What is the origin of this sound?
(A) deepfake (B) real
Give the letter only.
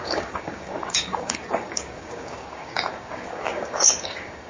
A